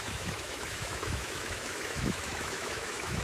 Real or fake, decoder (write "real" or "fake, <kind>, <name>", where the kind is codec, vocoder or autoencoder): fake, autoencoder, DAC-VAE